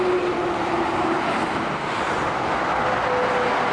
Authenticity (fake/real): real